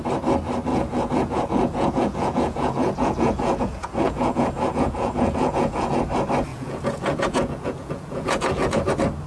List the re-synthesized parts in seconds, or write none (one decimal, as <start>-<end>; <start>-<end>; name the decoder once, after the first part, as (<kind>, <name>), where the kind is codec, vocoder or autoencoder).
0.7-5.9 (vocoder, Vocos); 6.5-8.9